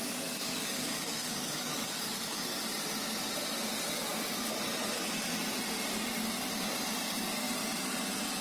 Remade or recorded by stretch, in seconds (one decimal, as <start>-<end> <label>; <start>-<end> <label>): 0.0-2.4 remade; 2.4-8.4 recorded